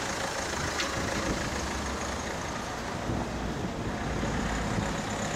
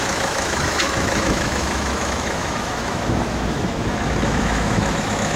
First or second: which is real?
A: first